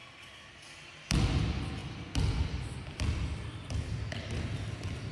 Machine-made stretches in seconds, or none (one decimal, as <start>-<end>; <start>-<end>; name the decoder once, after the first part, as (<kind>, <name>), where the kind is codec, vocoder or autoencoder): none